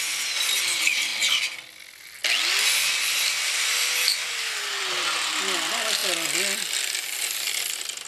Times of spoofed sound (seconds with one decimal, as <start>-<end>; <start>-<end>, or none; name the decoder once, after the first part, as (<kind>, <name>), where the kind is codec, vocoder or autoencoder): 0.0-1.1 (vocoder, BigVGAN v2); 2.7-6.0